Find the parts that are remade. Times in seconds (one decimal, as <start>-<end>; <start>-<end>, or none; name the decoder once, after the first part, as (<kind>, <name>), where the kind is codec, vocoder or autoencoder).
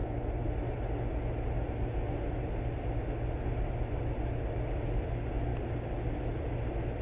none